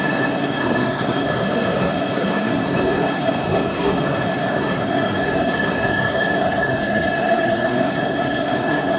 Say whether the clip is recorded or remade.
remade